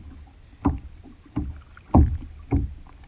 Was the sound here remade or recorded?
recorded